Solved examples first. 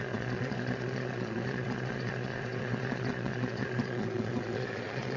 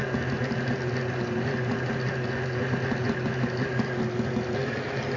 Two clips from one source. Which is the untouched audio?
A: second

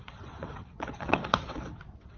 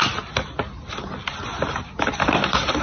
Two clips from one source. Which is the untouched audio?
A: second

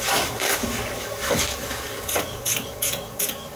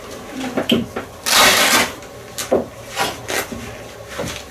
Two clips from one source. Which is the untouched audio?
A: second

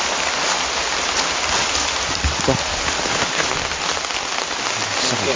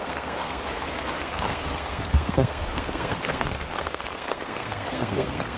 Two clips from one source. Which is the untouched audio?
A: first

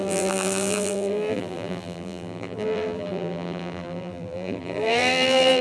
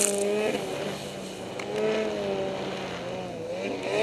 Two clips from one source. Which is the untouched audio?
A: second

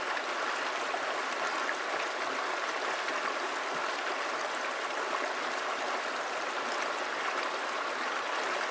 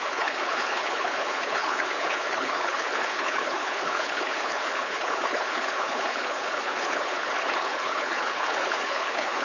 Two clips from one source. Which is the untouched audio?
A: first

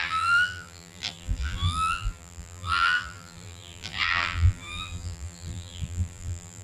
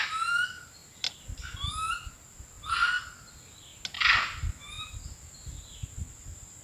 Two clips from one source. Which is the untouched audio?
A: second